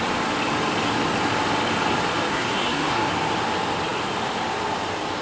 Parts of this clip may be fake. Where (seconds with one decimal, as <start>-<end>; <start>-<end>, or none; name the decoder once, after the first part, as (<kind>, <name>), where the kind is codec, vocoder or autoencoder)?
2.3-3.1 (codec, SNAC)